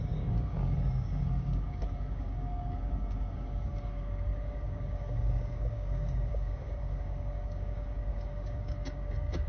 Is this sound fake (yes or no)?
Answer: yes